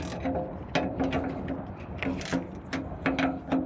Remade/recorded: recorded